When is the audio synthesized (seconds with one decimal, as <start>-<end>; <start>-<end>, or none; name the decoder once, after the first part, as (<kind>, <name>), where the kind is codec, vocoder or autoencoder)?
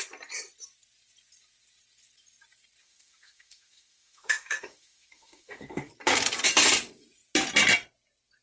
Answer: 2.8-5.9 (autoencoder, DAC-VAE)